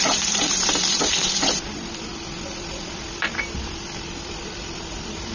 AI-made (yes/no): yes